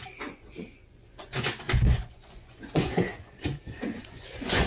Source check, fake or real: fake